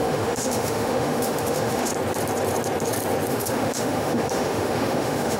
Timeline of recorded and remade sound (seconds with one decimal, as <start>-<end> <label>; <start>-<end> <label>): 0.0-1.9 remade; 1.9-3.3 recorded; 3.3-5.4 remade